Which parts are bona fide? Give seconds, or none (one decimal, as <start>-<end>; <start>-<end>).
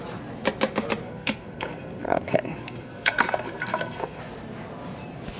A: 0.0-1.0; 4.2-5.4